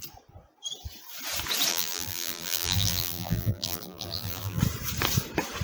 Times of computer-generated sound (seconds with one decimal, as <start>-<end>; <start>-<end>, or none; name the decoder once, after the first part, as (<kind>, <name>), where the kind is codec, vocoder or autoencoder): 1.7-4.6 (vocoder, BigVGAN v2)